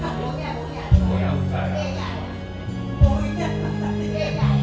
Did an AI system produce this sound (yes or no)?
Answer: no